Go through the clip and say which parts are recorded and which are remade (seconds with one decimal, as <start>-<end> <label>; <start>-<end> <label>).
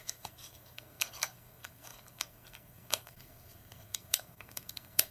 0.0-5.1 remade